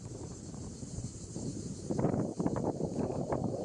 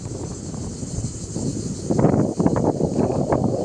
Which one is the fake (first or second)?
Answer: first